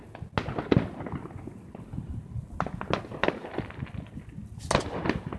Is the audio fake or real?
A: real